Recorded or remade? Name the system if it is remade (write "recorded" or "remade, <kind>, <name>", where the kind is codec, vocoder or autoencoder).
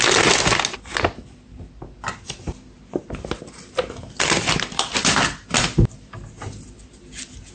recorded